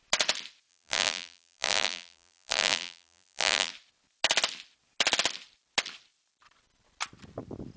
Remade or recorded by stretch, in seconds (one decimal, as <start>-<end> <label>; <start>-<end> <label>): 0.0-0.7 recorded; 0.7-3.7 remade; 3.7-7.8 recorded

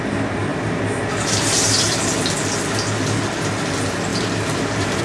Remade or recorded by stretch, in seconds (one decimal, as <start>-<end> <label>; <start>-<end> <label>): 0.0-0.5 recorded; 0.5-2.0 remade; 2.0-4.1 recorded; 4.1-5.0 remade

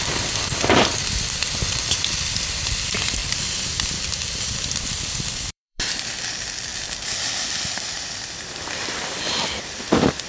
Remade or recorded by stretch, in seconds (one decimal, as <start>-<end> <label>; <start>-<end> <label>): 0.0-0.9 remade; 0.9-2.2 recorded; 2.2-3.2 remade; 3.2-4.8 recorded; 4.8-6.7 remade; 6.7-8.3 recorded; 8.3-10.3 remade

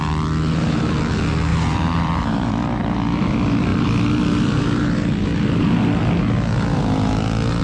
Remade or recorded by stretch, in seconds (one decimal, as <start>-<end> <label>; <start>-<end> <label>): 0.0-1.5 recorded; 1.5-2.5 remade; 2.5-7.6 recorded

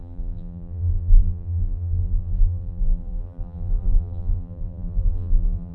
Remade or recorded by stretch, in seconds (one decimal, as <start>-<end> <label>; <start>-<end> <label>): 0.0-5.7 remade

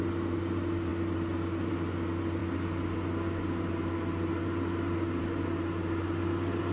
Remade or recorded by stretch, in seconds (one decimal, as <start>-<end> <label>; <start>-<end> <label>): 0.0-6.7 recorded